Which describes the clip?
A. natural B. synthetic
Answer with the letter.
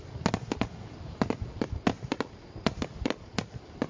A